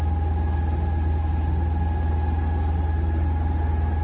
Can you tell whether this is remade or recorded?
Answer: recorded